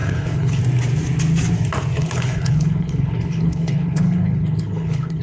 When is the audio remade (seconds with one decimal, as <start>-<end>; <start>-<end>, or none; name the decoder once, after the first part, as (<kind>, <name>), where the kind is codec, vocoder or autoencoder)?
0.0-0.6 (codec, HILCodec); 2.0-5.2